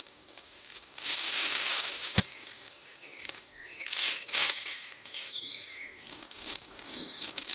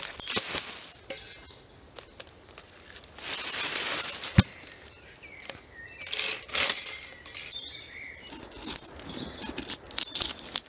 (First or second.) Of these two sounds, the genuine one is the second